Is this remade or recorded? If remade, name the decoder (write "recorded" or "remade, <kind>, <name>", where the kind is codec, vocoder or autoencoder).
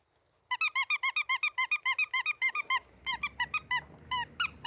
recorded